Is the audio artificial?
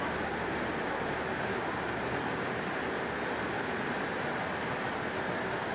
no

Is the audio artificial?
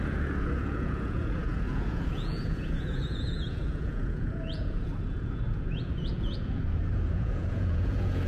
yes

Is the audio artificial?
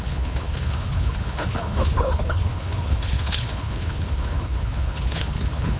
yes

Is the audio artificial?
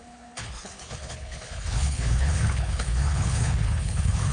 yes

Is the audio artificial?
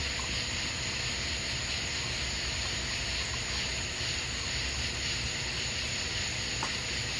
no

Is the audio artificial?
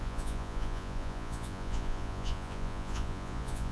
yes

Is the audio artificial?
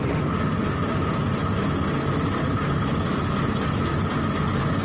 no